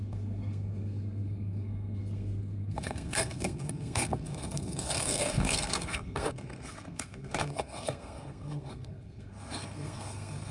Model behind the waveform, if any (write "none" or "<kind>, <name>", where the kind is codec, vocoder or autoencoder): codec, SNAC